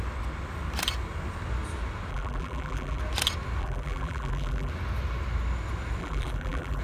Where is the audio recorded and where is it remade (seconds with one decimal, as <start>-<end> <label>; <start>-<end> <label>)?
0.0-2.1 recorded; 2.1-3.0 remade; 3.0-3.6 recorded; 3.6-4.7 remade; 4.7-6.0 recorded; 6.0-6.8 remade